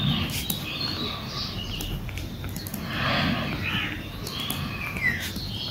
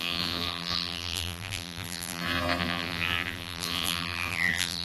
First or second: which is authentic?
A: first